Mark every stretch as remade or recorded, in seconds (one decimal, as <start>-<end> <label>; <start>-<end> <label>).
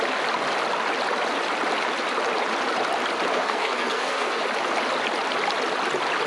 0.0-3.3 recorded; 3.3-4.4 remade; 4.4-6.3 recorded